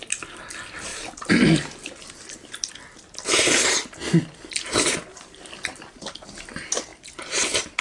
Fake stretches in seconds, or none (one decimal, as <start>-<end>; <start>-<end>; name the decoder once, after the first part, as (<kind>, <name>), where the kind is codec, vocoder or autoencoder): 5.1-6.4 (vocoder, BigVGAN v2); 6.9-7.8